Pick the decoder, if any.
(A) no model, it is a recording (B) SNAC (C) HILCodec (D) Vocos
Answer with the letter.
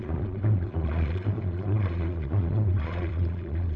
D